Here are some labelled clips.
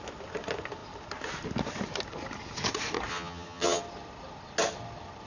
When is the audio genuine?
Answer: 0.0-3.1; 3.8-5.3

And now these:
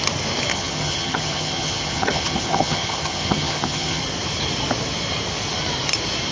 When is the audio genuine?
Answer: 0.0-0.5; 4.0-6.3

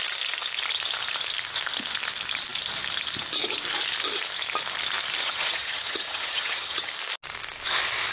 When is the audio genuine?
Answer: 0.0-5.2; 6.9-8.1

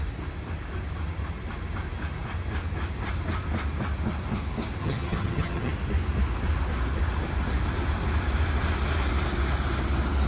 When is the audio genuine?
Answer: 0.0-4.8; 5.7-10.3

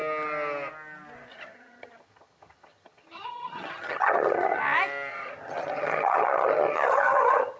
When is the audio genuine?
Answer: 0.0-1.3; 4.6-5.1

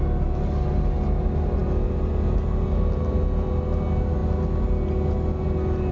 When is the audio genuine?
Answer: 0.0-5.9